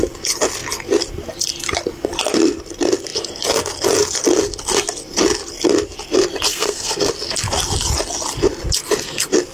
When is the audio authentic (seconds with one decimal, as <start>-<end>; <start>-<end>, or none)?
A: 0.0-6.5; 7.1-9.5